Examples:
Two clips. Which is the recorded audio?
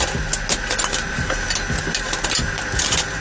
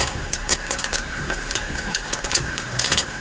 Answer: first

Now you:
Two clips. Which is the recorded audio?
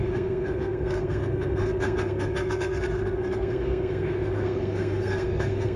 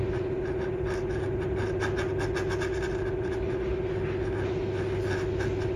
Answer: second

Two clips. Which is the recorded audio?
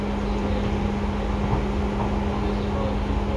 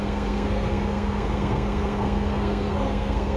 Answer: first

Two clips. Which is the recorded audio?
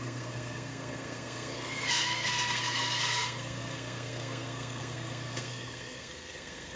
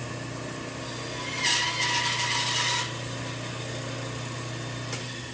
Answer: second